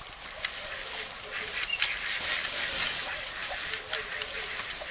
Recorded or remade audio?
recorded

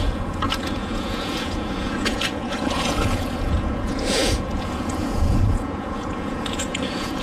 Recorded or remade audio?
remade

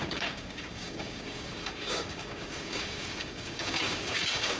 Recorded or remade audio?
remade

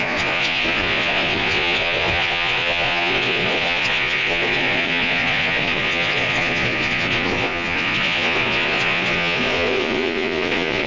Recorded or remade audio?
remade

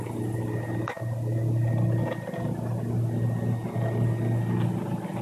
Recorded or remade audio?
recorded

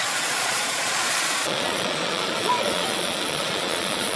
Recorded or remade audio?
remade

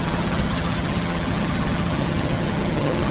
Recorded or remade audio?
remade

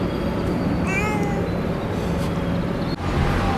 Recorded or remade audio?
recorded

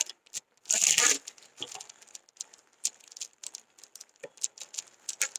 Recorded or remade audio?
recorded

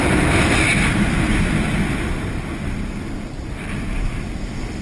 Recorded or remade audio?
recorded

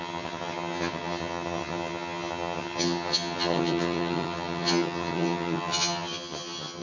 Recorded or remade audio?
remade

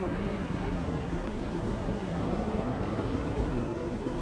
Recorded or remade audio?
remade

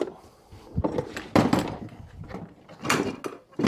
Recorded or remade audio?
recorded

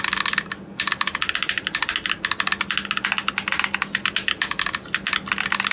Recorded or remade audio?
recorded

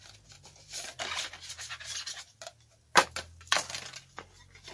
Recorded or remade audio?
recorded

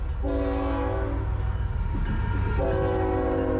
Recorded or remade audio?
recorded